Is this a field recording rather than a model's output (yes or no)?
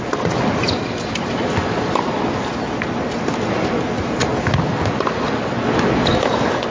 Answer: yes